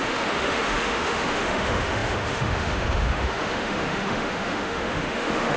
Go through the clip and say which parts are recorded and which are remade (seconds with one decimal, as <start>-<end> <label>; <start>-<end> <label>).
0.0-5.6 remade